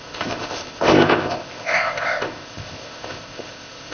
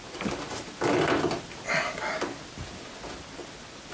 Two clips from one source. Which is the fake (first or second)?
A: first